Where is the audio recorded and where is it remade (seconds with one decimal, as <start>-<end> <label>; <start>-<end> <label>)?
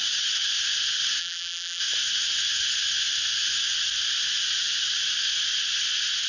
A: 0.0-1.2 recorded; 1.2-1.8 remade; 1.8-6.3 recorded